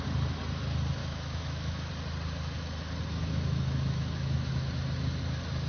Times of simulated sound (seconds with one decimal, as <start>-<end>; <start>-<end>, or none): 1.0-1.9; 3.2-4.5